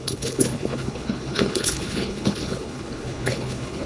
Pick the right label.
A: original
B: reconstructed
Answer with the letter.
B